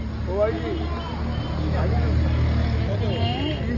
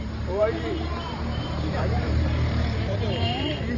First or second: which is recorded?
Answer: first